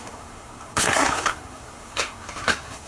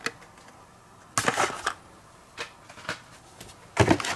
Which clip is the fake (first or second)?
first